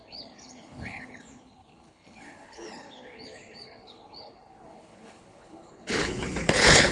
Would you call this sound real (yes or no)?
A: no